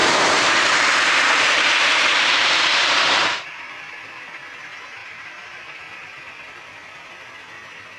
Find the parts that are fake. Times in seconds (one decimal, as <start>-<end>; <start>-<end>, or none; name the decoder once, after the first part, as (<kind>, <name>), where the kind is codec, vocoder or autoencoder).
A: 0.0-3.9 (vocoder, BigVGAN v2); 5.0-5.8